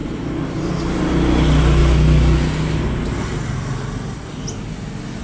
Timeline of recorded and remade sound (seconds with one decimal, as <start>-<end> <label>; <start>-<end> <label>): 0.0-5.2 recorded